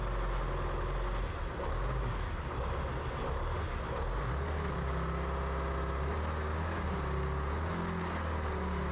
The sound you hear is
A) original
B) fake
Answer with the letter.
A